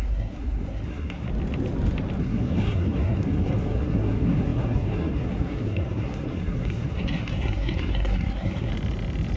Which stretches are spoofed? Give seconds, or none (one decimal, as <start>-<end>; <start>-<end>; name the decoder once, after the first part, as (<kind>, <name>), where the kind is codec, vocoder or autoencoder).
0.0-1.3 (codec, SNAC); 2.2-8.7